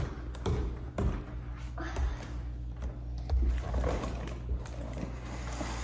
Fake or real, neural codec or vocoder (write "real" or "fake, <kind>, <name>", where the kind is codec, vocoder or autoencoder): real